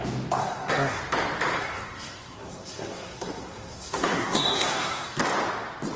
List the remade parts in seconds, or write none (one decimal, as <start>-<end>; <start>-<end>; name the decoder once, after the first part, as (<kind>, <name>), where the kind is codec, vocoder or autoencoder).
0.4-1.0 (codec, SNAC); 1.6-5.2